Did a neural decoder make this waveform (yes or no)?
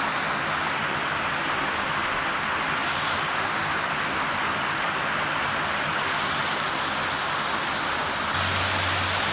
no